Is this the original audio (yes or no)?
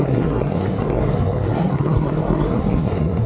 no